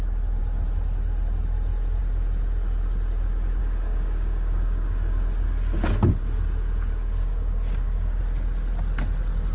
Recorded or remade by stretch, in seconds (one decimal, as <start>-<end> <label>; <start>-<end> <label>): 0.0-3.6 recorded; 3.6-6.2 remade; 6.2-6.9 recorded; 6.9-8.2 remade; 8.2-9.5 recorded